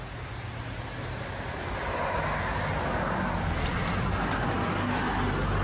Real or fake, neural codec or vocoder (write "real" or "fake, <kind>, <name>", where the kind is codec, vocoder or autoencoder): real